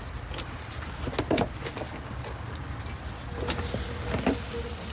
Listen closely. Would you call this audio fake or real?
real